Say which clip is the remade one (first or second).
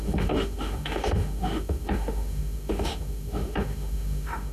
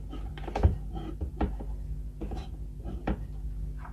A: first